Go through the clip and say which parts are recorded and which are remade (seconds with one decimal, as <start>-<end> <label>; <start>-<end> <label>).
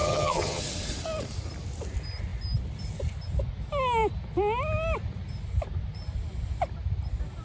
0.0-0.6 remade; 0.6-7.4 recorded